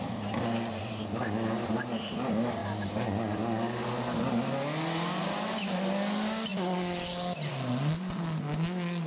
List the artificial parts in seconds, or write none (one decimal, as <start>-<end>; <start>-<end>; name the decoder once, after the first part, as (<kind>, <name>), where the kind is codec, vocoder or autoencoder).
none